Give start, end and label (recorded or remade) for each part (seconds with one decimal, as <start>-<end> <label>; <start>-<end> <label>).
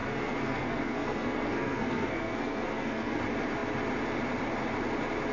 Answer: 0.0-3.2 remade; 3.2-5.3 recorded